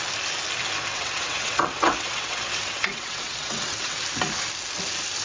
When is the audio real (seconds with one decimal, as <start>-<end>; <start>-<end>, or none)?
0.0-0.9; 4.0-5.2